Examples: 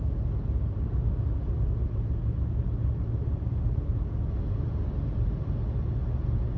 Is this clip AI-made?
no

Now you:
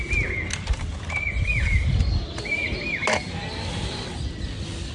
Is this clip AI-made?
no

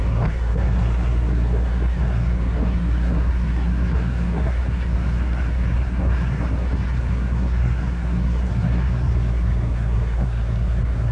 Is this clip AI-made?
yes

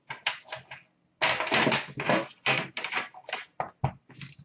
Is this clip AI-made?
no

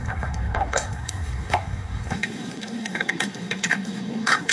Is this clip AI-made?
yes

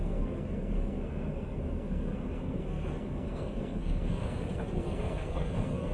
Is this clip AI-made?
yes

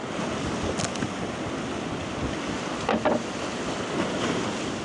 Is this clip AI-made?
no